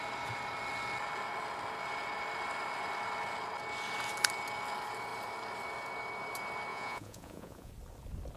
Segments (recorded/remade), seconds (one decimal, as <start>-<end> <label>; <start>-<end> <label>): 0.0-6.7 recorded; 6.7-7.7 remade; 7.7-8.4 recorded